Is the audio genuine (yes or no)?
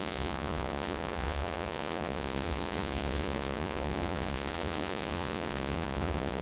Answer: no